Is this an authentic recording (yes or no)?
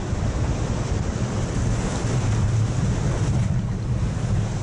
yes